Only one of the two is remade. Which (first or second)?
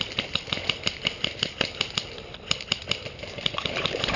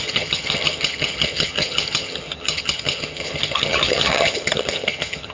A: second